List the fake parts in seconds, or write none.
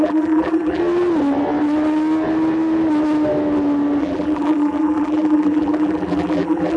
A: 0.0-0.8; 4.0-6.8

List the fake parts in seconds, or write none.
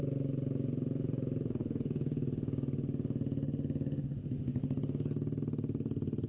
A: none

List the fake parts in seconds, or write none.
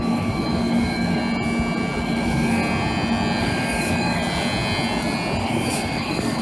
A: 0.0-1.2; 2.0-2.6; 3.4-4.2; 5.4-6.4